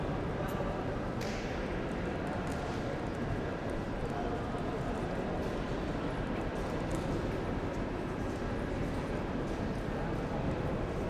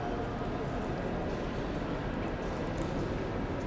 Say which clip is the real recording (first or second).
second